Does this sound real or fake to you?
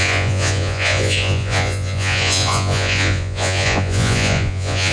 fake